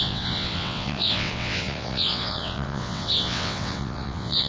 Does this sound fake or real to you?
fake